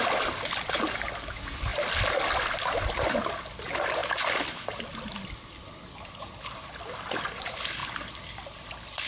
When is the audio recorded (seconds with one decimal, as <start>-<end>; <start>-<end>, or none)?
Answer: 0.0-9.1